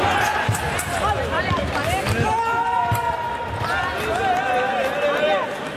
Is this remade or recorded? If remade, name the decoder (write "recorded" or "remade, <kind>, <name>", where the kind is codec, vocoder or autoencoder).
recorded